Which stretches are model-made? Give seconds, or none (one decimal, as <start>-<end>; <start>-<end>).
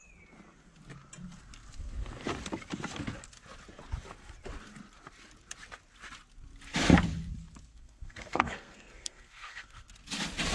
7.7-9.9